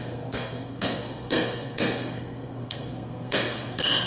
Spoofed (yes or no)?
yes